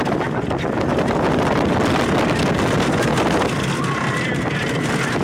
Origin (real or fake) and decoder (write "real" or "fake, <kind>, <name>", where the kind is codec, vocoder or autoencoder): real